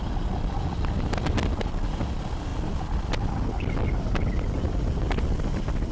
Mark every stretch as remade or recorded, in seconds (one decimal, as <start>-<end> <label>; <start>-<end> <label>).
0.0-5.9 recorded